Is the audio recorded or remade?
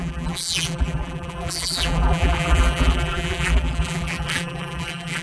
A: remade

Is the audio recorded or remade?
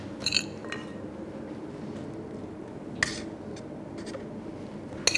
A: recorded